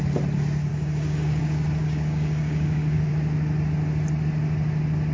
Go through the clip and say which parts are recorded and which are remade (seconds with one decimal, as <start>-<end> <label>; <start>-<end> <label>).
0.0-0.7 recorded; 0.7-1.4 remade; 1.4-1.8 recorded; 1.8-3.1 remade; 3.1-5.1 recorded